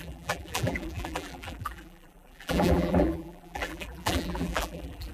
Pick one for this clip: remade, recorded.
remade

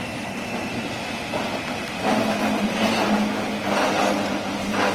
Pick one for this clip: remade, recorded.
recorded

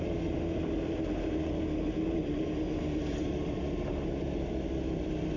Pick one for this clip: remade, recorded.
recorded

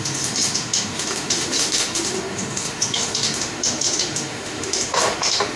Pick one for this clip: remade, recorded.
remade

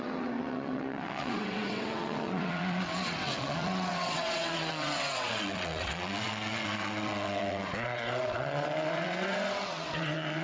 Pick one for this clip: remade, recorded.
remade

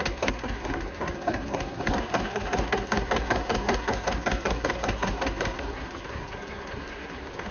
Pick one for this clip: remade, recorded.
remade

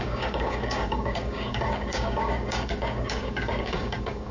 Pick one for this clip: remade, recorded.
remade